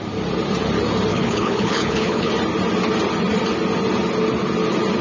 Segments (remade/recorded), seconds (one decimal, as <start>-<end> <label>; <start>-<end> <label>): 0.0-1.1 recorded; 1.1-2.3 remade; 2.3-5.0 recorded